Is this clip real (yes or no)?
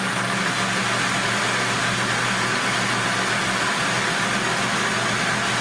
yes